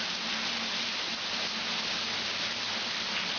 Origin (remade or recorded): recorded